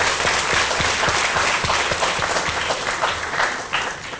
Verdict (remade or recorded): recorded